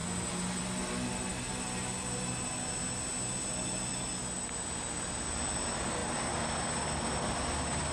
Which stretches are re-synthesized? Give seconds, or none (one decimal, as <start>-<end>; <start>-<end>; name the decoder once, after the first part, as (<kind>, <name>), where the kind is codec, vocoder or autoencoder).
none